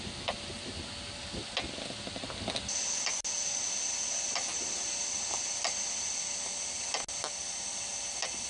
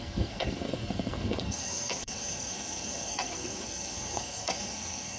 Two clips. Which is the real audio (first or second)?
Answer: first